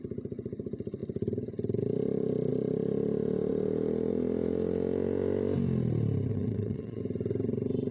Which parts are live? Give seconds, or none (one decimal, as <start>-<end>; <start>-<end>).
0.0-6.3; 7.0-7.9